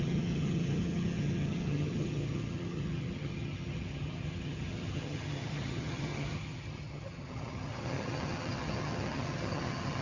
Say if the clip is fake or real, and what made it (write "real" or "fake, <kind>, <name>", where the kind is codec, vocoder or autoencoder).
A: fake, vocoder, HiFi-GAN